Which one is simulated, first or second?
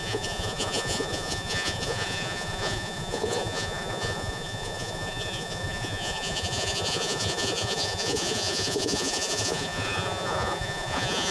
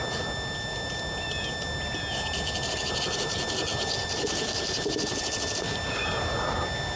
first